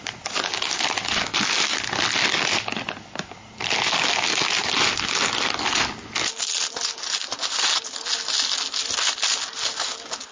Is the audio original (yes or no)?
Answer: yes